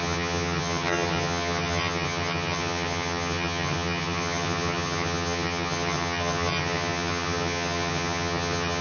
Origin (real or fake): fake